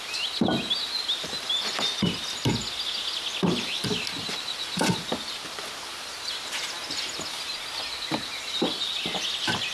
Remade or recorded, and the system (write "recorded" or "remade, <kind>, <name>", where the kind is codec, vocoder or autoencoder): recorded